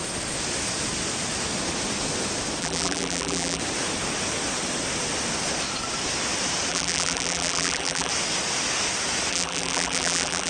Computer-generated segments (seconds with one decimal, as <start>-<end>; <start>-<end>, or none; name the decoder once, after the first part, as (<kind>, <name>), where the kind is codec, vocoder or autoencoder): 2.6-3.6 (vocoder, BigVGAN v2); 6.7-8.1; 9.3-10.5

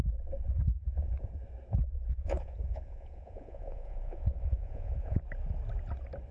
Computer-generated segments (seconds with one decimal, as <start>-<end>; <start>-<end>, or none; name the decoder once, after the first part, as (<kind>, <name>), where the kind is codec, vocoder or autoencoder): 0.8-1.3 (vocoder, Vocos); 1.8-5.2

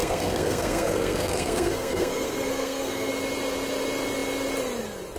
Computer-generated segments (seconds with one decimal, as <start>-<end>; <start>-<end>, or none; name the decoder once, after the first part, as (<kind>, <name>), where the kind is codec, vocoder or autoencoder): 0.0-3.1 (codec, SNAC)